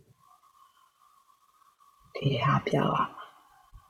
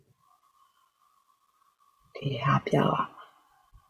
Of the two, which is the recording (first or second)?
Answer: second